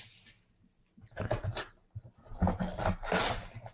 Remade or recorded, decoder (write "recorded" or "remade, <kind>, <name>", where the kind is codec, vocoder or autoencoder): recorded